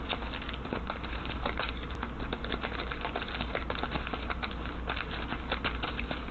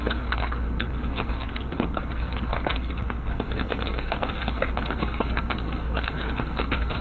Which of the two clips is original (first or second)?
first